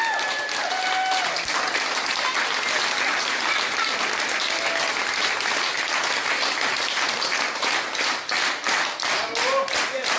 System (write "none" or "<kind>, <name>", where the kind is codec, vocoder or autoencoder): none